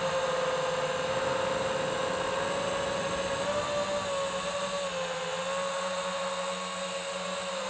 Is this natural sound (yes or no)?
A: yes